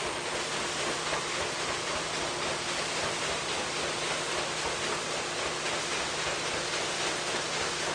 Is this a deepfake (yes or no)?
no